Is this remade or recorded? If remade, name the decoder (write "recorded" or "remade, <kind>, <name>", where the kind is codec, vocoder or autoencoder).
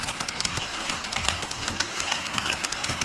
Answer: remade, codec, SNAC